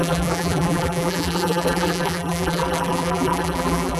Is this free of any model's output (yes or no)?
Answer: no